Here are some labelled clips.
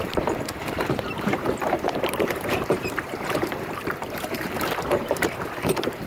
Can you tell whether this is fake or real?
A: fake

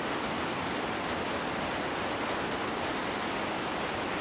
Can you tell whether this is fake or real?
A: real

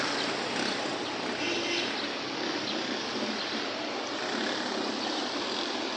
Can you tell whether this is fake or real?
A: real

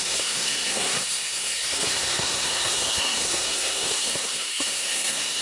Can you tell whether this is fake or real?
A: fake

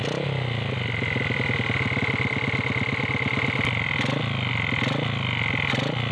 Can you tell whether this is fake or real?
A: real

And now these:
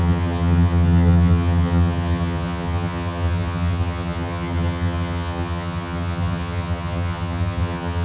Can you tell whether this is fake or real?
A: fake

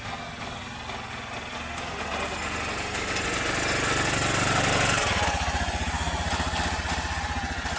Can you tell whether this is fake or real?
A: real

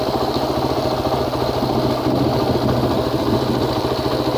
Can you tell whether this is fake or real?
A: real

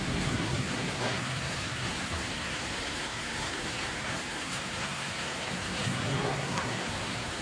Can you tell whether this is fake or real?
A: fake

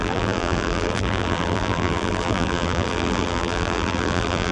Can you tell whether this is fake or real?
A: fake